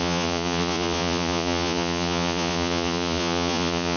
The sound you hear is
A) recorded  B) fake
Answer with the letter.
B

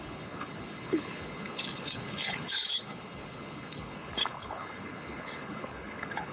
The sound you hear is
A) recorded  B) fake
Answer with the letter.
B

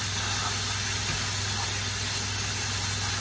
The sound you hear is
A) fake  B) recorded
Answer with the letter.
B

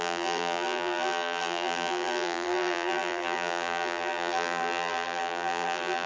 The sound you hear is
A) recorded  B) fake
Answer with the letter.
B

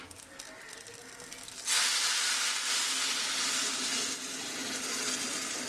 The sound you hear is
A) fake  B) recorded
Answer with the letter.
B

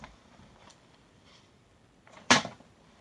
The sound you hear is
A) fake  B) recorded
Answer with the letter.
A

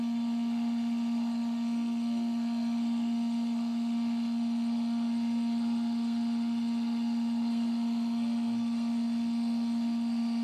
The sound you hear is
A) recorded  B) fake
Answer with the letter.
B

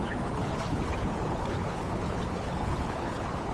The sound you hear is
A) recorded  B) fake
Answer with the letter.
B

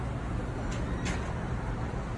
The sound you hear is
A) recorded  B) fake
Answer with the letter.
A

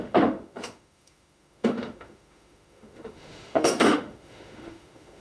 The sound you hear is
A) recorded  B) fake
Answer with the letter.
B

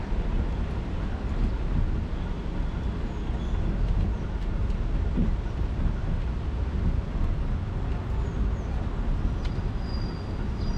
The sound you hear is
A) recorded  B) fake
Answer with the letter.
A